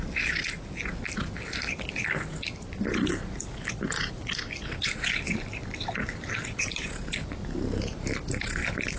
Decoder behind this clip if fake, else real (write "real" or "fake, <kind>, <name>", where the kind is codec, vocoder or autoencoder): real